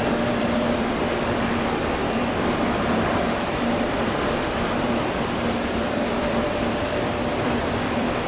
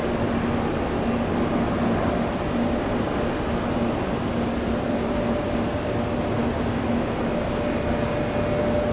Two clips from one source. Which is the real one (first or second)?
second